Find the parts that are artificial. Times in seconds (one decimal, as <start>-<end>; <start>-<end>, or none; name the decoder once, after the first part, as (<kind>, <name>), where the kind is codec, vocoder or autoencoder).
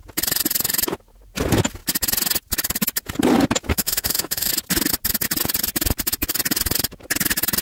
3.7-4.5 (autoencoder, DAC-VAE)